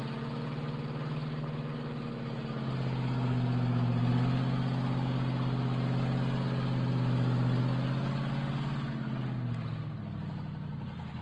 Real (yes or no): yes